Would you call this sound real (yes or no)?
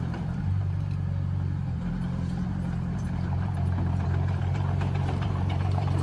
no